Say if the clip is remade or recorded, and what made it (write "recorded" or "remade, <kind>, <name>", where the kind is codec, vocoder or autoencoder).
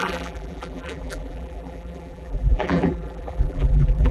remade, vocoder, BigVGAN v2